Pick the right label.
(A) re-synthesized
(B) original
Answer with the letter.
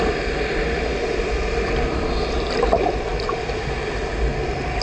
B